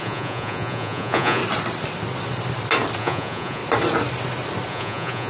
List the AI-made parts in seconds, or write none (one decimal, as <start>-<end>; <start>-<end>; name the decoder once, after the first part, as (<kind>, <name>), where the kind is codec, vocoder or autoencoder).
0.0-1.4 (vocoder, Vocos); 3.0-3.6; 4.7-5.3